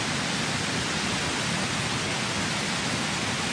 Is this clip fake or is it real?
real